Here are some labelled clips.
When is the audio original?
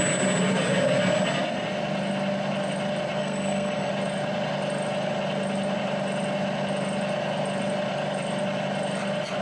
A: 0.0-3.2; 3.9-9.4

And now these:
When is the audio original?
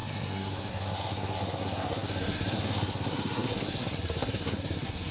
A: none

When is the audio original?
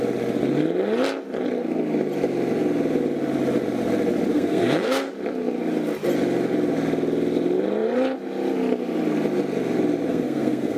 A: 0.0-4.3; 5.1-10.1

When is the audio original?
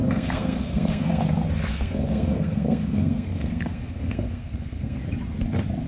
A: 1.2-1.7; 5.0-5.9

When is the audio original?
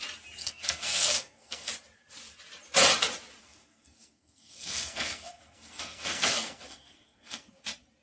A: 0.0-0.4; 1.7-3.4; 7.6-8.0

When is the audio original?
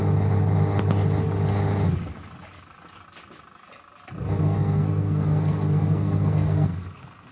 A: 0.0-4.4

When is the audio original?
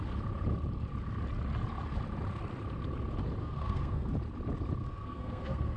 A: 0.0-3.4; 4.1-4.8